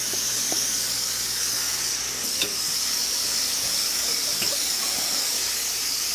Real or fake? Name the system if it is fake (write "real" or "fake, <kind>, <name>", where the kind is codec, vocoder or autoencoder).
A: fake, codec, DAC